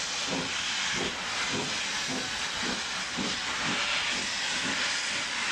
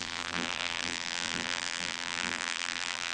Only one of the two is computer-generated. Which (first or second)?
second